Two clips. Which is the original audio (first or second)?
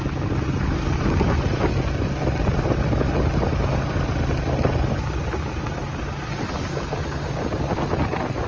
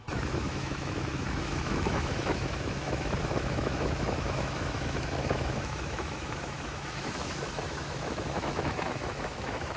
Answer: first